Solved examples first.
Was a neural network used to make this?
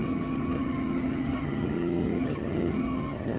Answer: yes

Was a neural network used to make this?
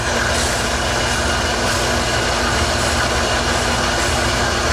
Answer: no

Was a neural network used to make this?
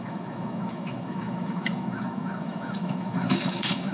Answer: yes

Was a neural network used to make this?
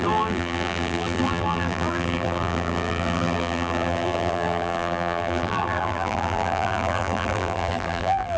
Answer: yes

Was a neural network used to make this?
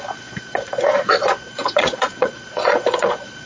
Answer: yes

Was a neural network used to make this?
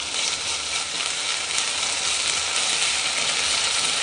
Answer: no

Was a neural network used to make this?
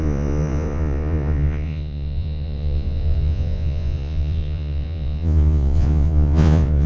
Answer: yes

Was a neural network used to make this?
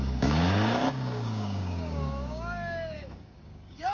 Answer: yes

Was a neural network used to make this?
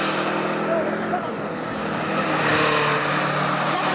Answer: no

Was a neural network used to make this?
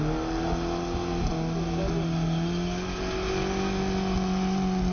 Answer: no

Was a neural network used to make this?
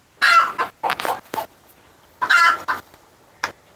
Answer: no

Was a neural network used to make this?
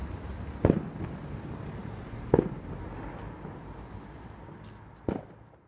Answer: no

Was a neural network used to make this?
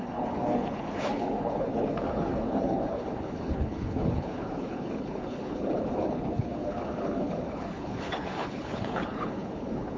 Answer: yes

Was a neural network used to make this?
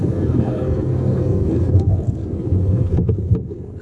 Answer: yes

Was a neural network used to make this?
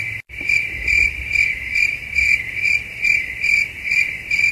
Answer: yes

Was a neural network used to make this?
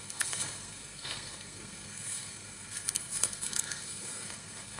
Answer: yes